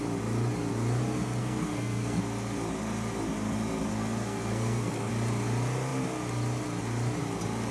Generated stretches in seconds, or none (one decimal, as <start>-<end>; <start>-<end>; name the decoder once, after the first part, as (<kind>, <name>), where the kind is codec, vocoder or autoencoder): 1.4-2.2 (codec, SNAC); 3.9-5.1